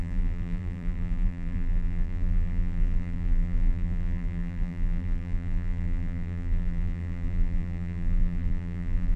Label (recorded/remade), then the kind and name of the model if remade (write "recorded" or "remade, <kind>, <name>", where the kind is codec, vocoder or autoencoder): remade, vocoder, BigVGAN v2